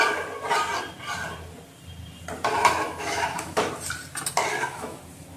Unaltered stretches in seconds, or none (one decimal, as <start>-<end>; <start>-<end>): 0.0-2.6; 3.7-4.5; 5.0-5.4